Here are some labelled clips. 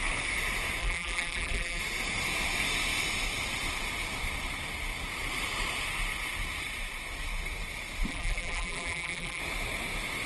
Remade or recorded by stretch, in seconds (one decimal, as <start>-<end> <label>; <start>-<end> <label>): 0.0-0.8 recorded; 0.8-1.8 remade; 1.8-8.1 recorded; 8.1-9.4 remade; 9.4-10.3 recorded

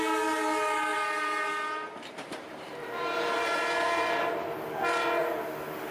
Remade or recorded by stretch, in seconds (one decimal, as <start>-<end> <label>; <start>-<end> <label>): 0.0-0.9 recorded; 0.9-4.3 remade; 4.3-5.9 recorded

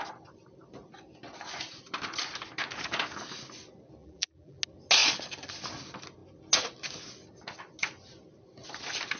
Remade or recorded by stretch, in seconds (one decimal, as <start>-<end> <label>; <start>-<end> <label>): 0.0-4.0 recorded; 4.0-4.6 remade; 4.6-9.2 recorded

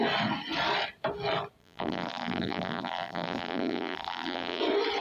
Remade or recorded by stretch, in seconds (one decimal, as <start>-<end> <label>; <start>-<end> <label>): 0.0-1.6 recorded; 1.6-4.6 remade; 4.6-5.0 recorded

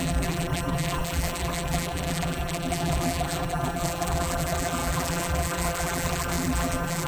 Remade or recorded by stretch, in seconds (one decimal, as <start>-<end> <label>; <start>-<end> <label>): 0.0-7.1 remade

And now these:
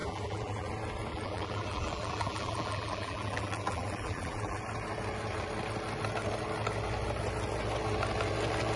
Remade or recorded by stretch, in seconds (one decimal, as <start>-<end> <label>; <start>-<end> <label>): 0.0-0.7 remade; 0.7-1.1 recorded; 1.1-4.6 remade; 4.6-8.8 recorded